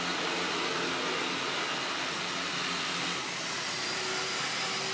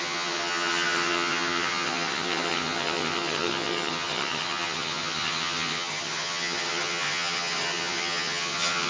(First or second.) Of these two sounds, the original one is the first